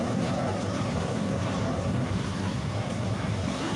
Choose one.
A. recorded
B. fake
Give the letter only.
B